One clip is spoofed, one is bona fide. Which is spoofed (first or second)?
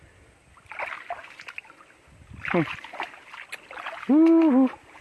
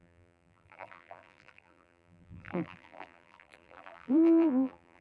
second